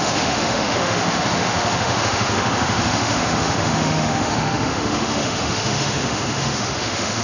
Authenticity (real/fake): fake